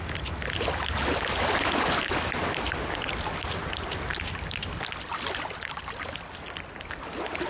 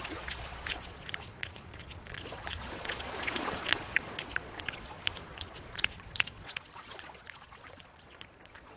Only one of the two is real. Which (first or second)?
first